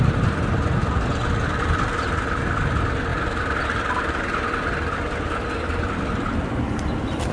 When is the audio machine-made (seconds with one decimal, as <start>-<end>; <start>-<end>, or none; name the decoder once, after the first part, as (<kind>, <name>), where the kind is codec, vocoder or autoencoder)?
none